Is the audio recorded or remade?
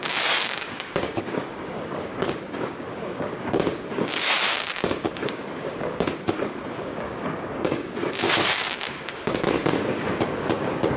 remade